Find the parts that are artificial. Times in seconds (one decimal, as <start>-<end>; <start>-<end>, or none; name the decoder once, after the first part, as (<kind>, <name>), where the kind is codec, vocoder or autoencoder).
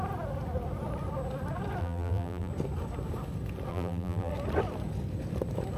1.8-2.5 (vocoder, BigVGAN v2); 3.7-4.3